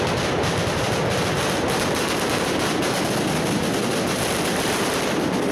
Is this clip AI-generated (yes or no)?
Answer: no